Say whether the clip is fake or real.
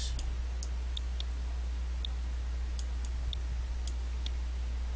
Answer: real